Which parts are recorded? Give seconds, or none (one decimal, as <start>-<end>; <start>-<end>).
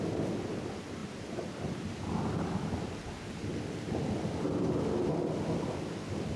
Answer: 0.0-6.4